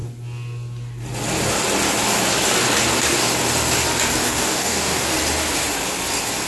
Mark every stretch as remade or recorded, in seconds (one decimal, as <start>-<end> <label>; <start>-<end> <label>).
0.0-4.2 recorded; 4.2-5.1 remade; 5.1-6.5 recorded